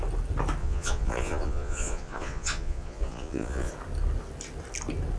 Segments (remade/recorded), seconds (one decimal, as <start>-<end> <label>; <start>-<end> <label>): 0.0-0.6 recorded; 0.6-3.7 remade; 3.7-5.2 recorded